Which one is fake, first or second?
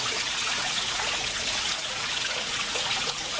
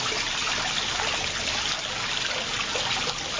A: first